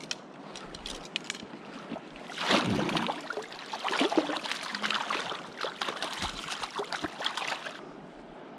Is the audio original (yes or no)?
yes